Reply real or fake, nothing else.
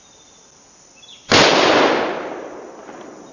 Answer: real